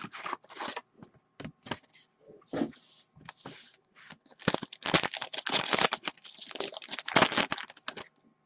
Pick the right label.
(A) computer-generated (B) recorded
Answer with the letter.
B